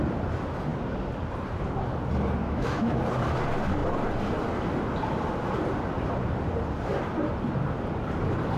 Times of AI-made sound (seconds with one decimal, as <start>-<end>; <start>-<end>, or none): 2.4-3.0